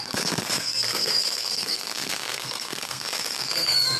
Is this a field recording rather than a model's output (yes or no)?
no